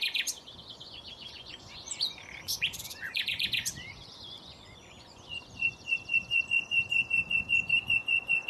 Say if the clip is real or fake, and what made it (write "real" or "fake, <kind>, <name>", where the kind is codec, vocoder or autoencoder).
fake, vocoder, Vocos